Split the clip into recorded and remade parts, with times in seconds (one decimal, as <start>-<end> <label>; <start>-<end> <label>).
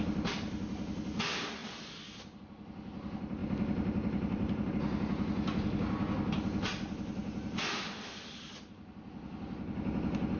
0.0-3.4 recorded; 3.4-4.7 remade; 4.7-10.4 recorded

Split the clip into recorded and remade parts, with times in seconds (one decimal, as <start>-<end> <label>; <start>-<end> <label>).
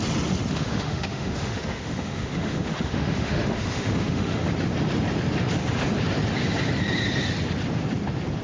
0.0-0.5 recorded; 0.5-4.5 remade; 4.5-8.4 recorded